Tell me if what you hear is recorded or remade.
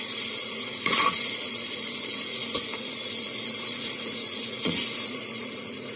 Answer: remade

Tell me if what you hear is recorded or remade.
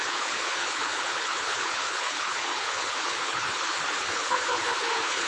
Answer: remade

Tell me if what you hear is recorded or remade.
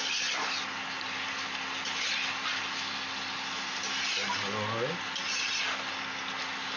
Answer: recorded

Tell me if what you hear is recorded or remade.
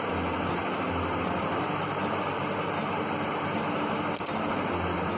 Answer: recorded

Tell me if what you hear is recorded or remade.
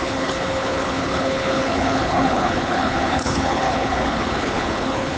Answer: remade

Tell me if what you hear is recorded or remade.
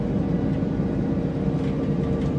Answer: recorded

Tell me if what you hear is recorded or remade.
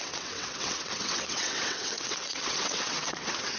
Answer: remade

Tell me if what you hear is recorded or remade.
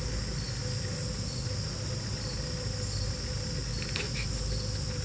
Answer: recorded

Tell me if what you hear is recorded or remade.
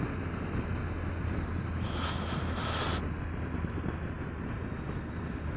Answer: recorded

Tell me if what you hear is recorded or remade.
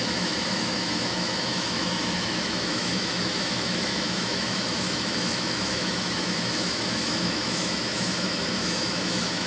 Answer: remade